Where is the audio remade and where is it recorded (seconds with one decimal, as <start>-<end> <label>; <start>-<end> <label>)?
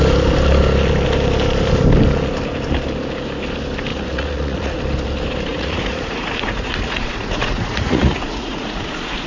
0.0-3.9 recorded; 3.9-4.8 remade; 4.8-5.5 recorded; 5.5-9.3 remade